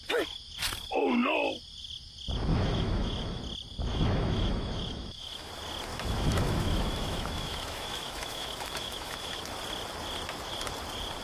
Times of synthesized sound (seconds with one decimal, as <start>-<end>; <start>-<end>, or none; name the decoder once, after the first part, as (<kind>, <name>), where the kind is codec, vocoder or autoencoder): 2.5-3.4 (autoencoder, DAC-VAE); 3.9-5.5; 5.9-9.4